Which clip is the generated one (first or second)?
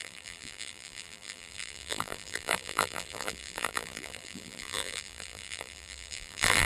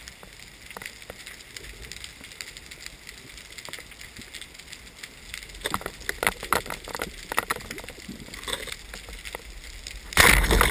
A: first